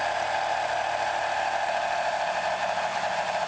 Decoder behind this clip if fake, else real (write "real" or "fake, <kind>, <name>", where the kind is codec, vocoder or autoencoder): fake, vocoder, BigVGAN v2